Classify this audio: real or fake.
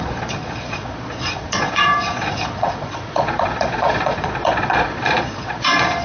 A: fake